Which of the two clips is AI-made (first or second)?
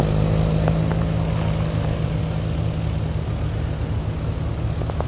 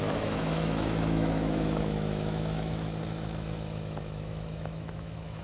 second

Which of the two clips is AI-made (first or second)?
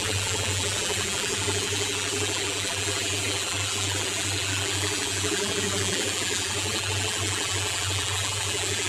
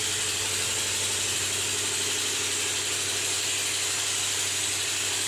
first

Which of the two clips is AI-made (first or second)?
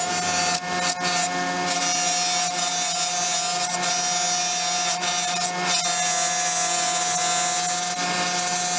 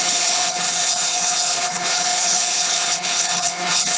second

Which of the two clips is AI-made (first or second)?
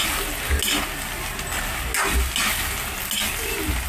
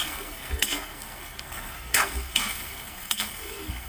second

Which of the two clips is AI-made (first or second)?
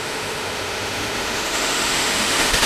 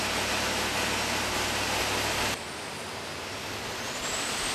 first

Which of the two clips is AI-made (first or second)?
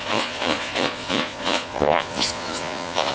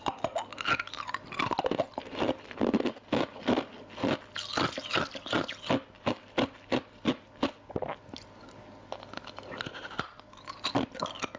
first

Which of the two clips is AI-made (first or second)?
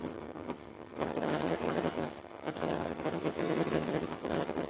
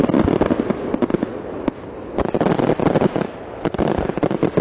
first